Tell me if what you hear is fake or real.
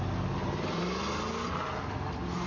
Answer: real